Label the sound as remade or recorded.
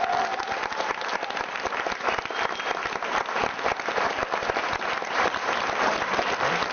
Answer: remade